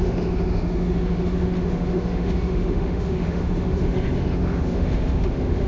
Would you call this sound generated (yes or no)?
yes